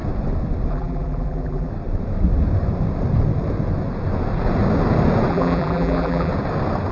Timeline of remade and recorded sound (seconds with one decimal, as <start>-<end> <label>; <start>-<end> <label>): 0.0-0.7 recorded; 0.7-1.7 remade; 1.7-5.3 recorded; 5.3-6.3 remade; 6.3-6.9 recorded